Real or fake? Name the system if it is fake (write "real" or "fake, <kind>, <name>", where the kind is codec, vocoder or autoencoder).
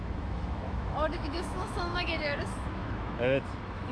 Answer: fake, autoencoder, DAC-VAE